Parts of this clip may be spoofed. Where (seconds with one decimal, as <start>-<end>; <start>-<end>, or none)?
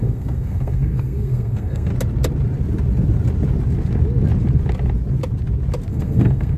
0.0-1.9; 5.9-6.6